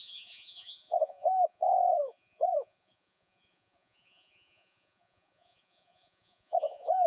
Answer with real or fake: fake